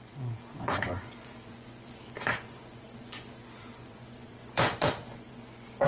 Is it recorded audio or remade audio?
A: remade